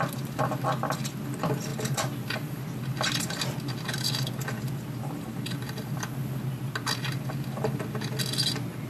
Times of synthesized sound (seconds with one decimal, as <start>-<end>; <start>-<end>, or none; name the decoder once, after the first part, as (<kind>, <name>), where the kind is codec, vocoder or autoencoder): none